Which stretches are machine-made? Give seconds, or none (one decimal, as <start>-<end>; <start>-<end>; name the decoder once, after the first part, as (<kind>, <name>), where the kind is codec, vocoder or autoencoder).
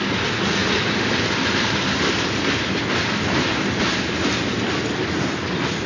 0.6-4.1 (vocoder, BigVGAN v2)